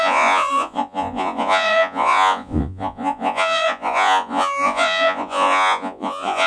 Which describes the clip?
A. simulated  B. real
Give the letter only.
A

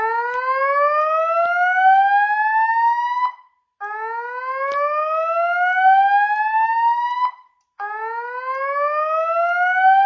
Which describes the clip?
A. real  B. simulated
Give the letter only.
A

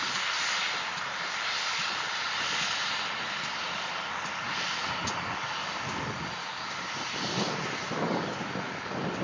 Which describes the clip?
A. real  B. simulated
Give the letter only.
A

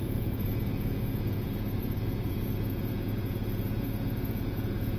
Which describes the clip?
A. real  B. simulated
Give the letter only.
B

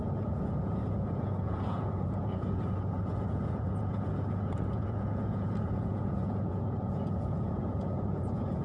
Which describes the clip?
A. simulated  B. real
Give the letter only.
A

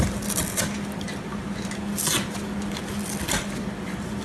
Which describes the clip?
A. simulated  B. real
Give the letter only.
B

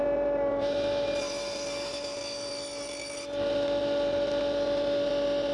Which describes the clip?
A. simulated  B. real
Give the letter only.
B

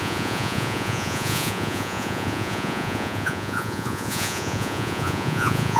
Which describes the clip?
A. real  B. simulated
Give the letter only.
B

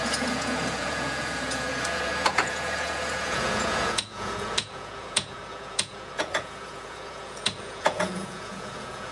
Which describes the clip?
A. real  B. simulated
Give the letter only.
B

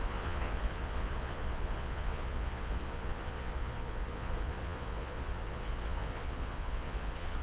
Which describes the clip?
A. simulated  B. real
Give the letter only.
A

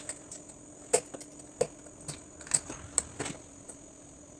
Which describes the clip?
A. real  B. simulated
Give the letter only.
A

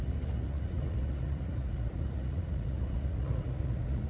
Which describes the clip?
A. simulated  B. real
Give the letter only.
A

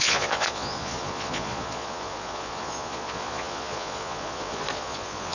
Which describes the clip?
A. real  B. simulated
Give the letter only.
B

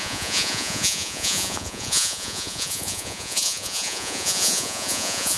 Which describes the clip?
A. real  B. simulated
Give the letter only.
B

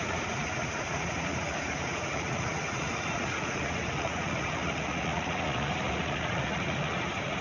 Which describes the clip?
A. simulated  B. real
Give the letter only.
A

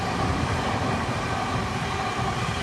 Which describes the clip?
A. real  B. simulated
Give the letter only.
A